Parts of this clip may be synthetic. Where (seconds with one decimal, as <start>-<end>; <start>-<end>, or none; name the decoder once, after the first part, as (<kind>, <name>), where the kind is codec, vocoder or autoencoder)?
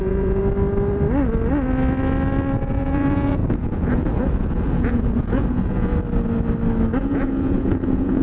0.0-0.4 (vocoder, Vocos); 2.6-5.9; 7.0-8.2